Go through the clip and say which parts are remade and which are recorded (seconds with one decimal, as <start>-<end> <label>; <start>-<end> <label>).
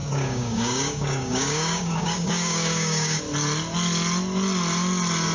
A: 0.0-3.2 remade; 3.2-5.3 recorded